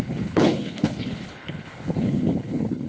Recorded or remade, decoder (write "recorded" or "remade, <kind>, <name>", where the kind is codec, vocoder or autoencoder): remade, codec, HILCodec